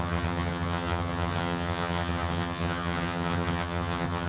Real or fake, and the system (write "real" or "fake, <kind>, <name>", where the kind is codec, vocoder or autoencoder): fake, vocoder, HiFi-GAN